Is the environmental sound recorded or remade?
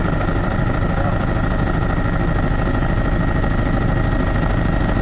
recorded